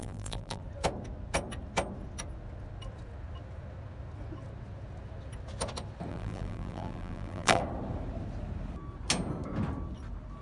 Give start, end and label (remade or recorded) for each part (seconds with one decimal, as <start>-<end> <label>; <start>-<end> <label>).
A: 0.0-0.6 remade; 0.6-6.1 recorded; 6.1-7.6 remade; 7.6-10.4 recorded